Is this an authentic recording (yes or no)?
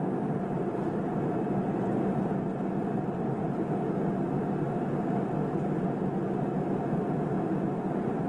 yes